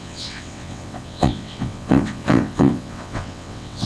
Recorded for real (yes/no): no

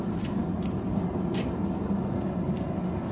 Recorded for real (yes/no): yes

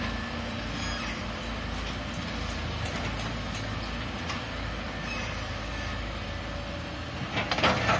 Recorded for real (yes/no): yes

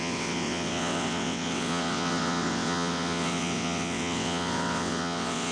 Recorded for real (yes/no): no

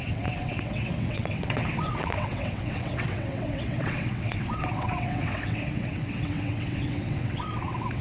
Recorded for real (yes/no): no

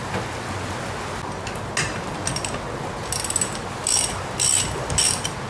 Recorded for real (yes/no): yes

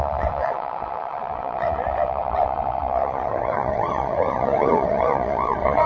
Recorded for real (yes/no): no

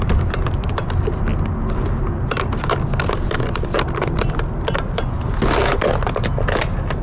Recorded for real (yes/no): yes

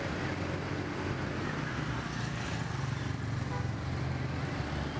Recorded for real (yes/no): yes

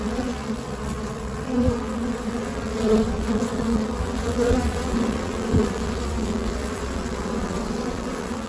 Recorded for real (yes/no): no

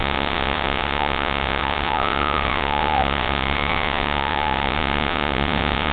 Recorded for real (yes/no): no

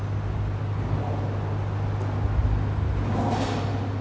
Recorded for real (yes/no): yes